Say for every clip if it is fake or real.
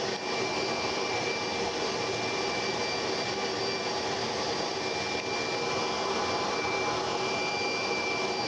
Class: real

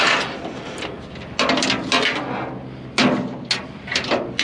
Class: real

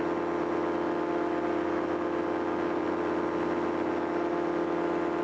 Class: real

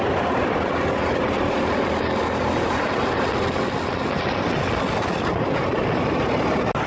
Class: real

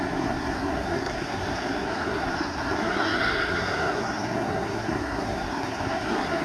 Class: fake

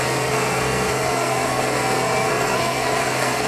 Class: fake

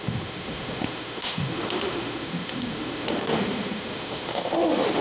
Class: fake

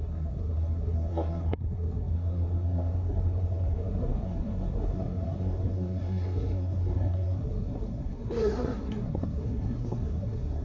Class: fake